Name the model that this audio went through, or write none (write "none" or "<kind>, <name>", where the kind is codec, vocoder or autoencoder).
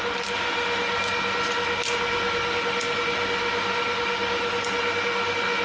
none